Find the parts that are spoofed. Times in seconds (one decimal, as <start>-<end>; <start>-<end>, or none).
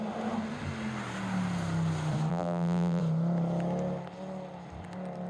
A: 2.3-3.0